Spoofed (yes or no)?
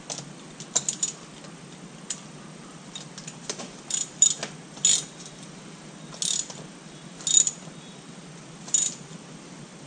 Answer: no